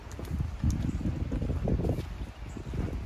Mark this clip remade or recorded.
recorded